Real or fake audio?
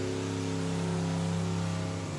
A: real